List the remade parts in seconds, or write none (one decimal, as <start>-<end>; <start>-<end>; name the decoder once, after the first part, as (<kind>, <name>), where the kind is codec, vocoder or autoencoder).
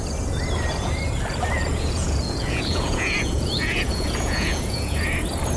1.7-5.1 (vocoder, Vocos)